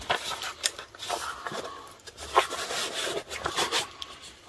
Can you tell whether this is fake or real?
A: real